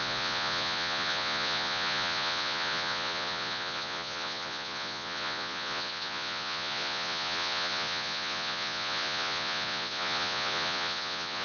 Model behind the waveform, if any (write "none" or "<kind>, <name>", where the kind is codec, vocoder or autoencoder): vocoder, Vocos